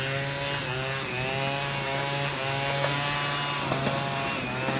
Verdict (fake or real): real